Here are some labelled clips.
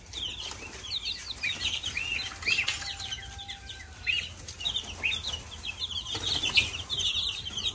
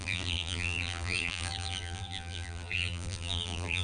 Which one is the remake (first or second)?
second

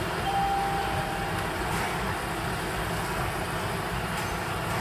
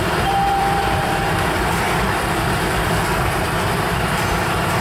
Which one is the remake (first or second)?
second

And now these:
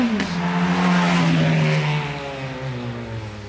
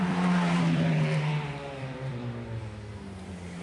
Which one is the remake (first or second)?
second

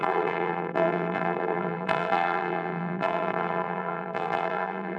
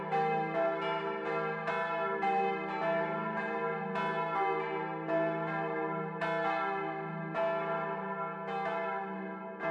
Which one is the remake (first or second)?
first